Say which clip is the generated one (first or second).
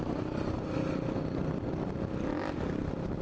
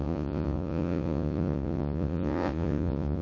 second